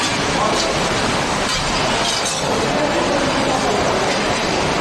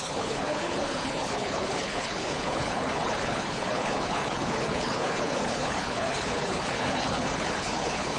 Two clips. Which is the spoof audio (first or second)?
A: second